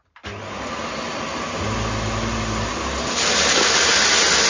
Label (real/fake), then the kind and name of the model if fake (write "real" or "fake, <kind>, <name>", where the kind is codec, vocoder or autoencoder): real